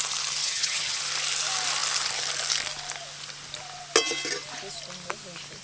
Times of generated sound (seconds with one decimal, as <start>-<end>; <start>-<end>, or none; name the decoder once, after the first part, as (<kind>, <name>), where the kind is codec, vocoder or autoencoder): 0.4-1.0 (vocoder, HiFi-GAN)